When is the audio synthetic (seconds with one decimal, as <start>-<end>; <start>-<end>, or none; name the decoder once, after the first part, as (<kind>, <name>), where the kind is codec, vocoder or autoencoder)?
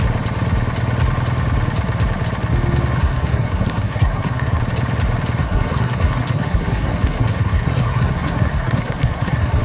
3.0-4.6 (codec, SNAC); 5.4-9.6